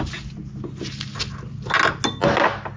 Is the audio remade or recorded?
recorded